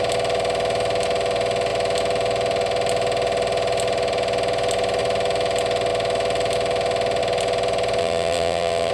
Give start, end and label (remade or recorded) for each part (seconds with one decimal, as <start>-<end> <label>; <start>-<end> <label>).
0.0-8.0 recorded; 8.0-8.9 remade